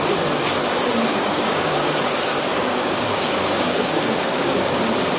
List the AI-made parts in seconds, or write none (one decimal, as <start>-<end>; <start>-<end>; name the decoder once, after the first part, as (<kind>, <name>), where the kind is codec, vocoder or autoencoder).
1.1-1.9 (codec, DAC); 2.5-4.8